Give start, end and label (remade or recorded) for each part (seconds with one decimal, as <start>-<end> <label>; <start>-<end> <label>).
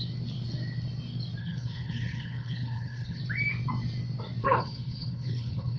0.0-1.4 recorded; 1.4-3.2 remade; 3.2-4.4 recorded; 4.4-5.8 remade